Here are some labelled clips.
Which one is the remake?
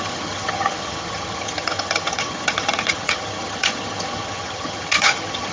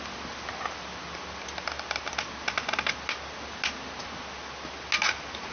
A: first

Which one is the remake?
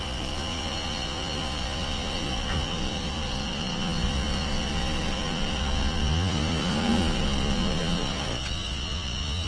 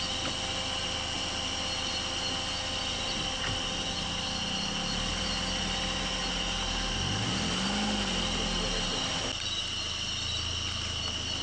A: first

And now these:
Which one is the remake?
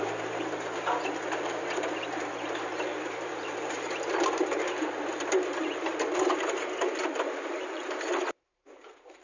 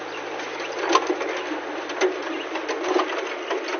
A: first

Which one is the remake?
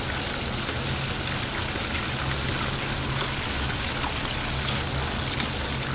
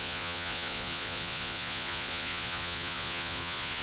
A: second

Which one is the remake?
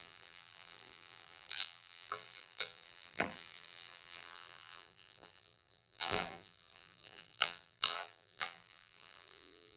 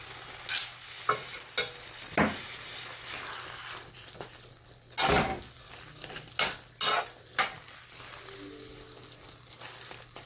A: first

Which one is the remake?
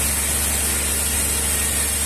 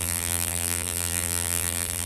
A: second